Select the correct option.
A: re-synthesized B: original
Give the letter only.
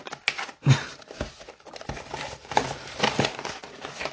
B